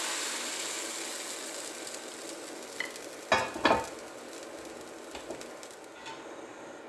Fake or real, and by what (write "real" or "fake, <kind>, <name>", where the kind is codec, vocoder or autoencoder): real